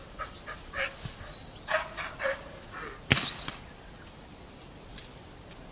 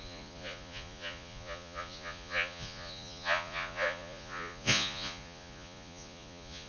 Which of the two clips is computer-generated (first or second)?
second